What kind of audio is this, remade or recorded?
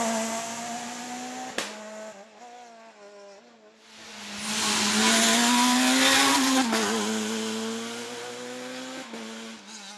recorded